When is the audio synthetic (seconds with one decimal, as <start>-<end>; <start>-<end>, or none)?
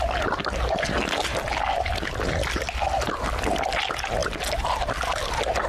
none